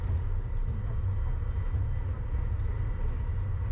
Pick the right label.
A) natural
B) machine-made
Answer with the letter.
A